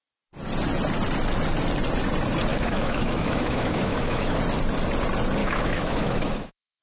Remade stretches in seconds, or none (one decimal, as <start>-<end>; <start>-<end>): 2.5-4.4; 5.4-6.8